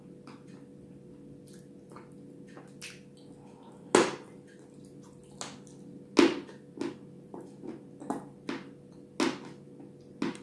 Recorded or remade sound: recorded